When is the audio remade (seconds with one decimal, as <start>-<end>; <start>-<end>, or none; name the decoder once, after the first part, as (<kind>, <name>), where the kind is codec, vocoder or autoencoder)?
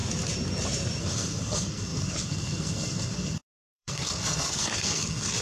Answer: 1.0-5.4 (codec, SNAC)